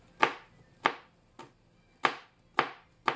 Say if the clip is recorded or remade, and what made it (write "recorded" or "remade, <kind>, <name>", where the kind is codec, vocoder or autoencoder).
recorded